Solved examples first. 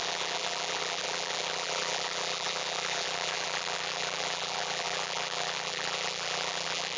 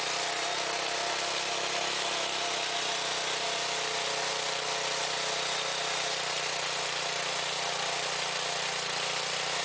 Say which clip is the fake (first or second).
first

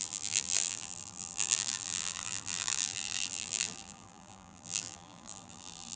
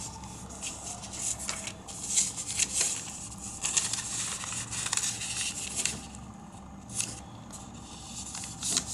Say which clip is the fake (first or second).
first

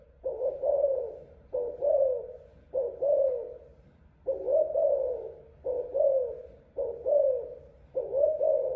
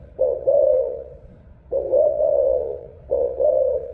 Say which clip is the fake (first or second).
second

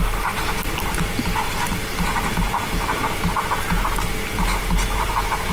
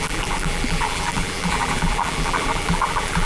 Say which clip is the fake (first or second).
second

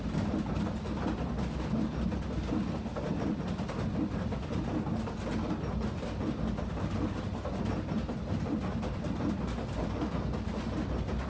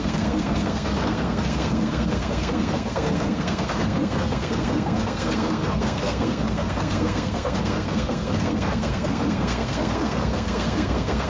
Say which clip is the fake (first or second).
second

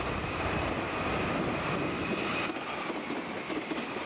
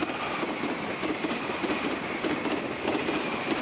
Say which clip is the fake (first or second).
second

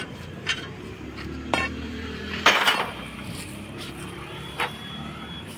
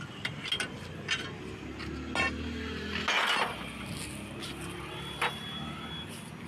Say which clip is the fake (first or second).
first